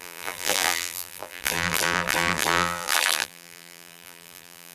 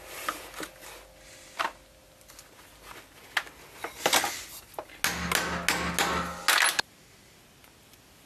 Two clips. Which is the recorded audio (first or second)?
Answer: second